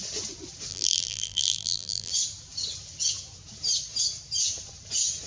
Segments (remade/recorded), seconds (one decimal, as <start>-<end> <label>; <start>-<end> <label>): 0.0-0.7 recorded; 0.7-2.1 remade; 2.1-5.3 recorded